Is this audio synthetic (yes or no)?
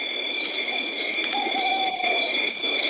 yes